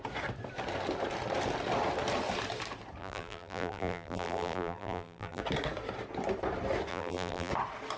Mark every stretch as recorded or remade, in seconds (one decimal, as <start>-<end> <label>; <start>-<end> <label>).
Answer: 0.0-3.0 recorded; 3.0-5.4 remade; 5.4-6.9 recorded; 6.9-7.5 remade; 7.5-8.0 recorded